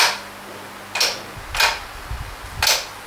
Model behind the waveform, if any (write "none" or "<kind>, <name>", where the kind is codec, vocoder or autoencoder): none